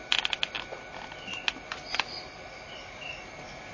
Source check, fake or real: real